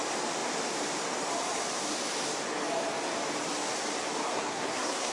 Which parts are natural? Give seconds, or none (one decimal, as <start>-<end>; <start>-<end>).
0.0-4.3